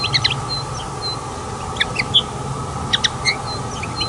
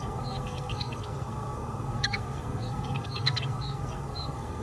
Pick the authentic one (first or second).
first